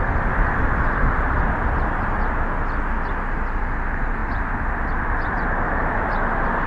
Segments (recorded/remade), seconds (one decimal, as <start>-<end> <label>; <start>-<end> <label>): 0.0-6.7 recorded